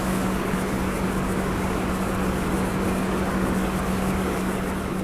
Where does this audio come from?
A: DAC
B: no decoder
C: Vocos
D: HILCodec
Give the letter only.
A